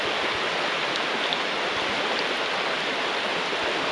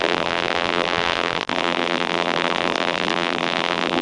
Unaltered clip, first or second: first